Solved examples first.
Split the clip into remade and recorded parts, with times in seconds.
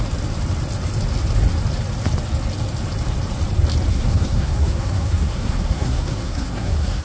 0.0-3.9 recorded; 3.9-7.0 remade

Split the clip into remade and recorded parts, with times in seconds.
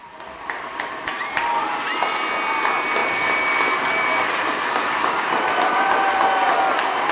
0.0-7.1 recorded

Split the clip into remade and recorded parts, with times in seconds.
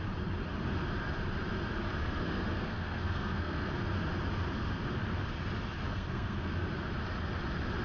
0.0-2.0 recorded; 2.0-3.7 remade; 3.7-5.9 recorded; 5.9-6.5 remade; 6.5-7.8 recorded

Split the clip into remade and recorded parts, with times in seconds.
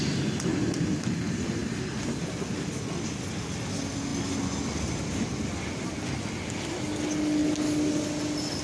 0.0-8.6 recorded